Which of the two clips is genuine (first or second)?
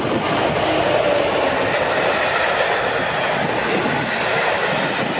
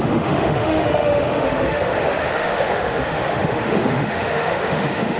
first